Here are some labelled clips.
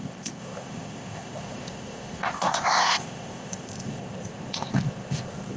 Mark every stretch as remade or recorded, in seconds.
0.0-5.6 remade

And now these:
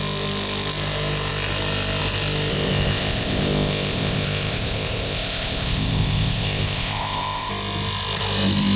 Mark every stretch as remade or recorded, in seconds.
0.0-2.5 recorded; 2.5-7.5 remade; 7.5-8.8 recorded

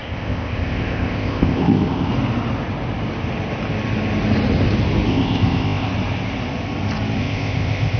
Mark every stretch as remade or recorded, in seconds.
0.0-2.1 remade; 2.1-5.1 recorded; 5.1-5.9 remade; 5.9-7.2 recorded; 7.2-8.0 remade

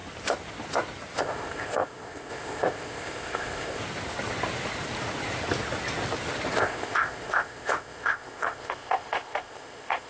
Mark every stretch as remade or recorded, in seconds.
0.0-1.2 recorded; 1.2-3.8 remade; 3.8-6.5 recorded; 6.5-10.1 remade